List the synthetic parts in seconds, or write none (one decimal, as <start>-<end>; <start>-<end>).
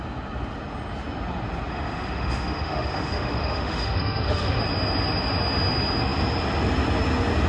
1.7-4.6